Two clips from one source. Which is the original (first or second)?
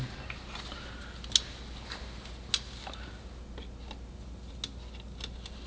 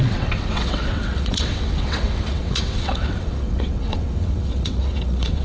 first